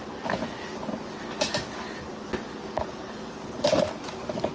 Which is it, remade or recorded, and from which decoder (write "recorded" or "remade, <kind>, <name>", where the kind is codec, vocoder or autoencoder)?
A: recorded